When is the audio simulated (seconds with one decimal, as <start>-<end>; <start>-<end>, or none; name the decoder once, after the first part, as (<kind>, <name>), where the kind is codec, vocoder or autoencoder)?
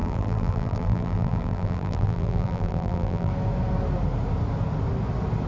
0.0-3.3 (vocoder, BigVGAN v2)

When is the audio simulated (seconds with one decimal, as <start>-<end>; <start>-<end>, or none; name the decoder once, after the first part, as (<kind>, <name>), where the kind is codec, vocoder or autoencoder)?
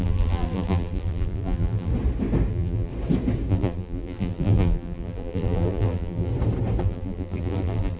0.0-1.9 (vocoder, BigVGAN v2); 2.5-2.9; 3.5-6.3; 6.8-8.0